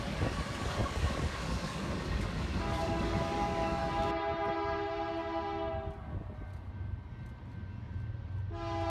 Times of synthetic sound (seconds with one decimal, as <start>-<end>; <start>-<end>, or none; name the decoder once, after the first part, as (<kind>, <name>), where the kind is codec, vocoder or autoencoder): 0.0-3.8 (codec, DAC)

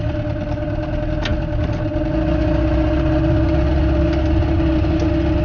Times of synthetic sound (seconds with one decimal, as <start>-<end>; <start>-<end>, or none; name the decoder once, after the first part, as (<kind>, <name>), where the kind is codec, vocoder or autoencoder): none

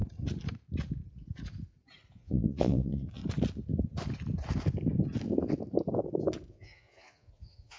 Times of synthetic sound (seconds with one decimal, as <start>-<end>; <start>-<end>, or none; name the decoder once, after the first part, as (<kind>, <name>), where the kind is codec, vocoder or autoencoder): 2.1-3.2 (vocoder, Vocos); 6.5-7.8

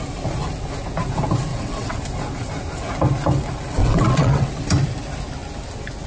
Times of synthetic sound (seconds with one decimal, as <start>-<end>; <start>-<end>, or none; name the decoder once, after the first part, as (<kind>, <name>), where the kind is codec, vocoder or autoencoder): 1.5-2.0 (vocoder, WaveNeXt); 3.8-4.5

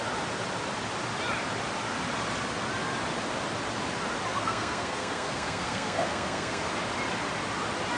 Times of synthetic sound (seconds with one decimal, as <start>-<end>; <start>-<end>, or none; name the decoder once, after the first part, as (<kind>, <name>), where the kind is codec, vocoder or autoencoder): 4.3-6.7 (codec, SNAC)